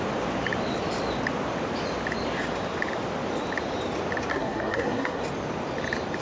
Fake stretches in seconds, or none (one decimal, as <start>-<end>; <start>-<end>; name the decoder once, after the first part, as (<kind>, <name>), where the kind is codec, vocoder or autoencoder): 4.3-5.2 (codec, SNAC)